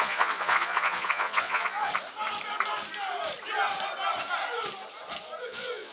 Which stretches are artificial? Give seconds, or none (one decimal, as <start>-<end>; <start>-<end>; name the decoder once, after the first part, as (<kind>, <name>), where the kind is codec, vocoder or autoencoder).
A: 0.0-1.9 (vocoder, Vocos); 5.4-5.9